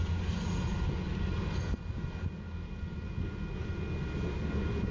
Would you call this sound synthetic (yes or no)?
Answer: no